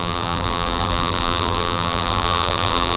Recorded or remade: remade